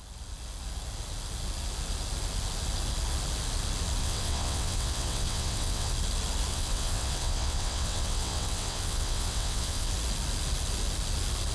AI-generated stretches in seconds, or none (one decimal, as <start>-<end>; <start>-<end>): 4.0-5.9; 6.5-9.9